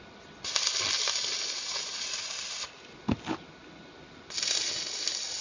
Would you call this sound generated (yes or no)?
no